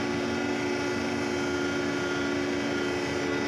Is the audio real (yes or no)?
yes